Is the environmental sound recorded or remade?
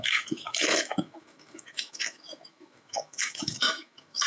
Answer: remade